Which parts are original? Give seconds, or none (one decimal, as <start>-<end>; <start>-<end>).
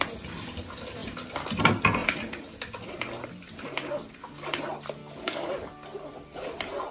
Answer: 0.0-5.0; 5.7-6.9